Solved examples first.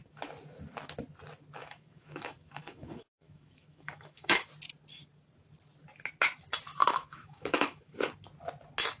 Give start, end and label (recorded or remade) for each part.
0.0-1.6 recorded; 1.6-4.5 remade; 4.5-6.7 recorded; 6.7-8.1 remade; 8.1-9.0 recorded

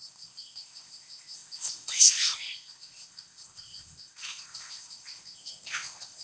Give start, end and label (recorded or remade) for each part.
0.0-6.2 remade

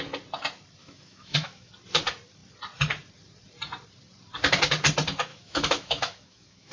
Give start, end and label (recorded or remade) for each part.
0.0-0.8 recorded; 0.8-1.7 remade; 1.7-5.3 recorded; 5.3-6.7 remade

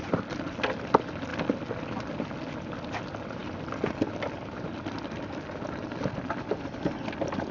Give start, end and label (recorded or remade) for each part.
0.0-7.5 recorded

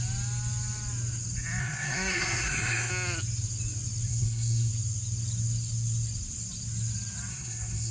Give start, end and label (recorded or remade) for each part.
0.0-1.6 recorded; 1.6-2.9 remade; 2.9-4.1 recorded; 4.1-4.7 remade; 4.7-7.3 recorded; 7.3-7.9 remade